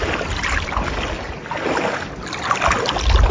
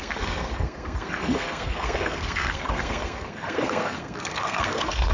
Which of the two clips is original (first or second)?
first